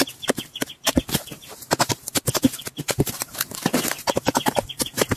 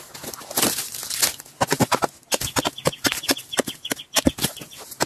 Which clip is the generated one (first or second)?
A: first